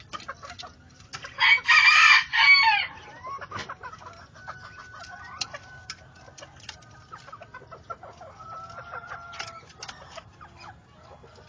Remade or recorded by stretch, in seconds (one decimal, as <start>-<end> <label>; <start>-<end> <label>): 0.0-11.5 recorded